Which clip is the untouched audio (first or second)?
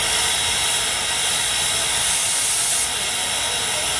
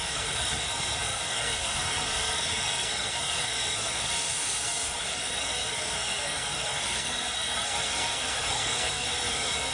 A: first